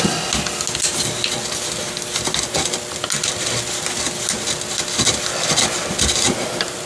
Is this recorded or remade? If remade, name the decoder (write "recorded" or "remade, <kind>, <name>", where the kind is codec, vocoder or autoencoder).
recorded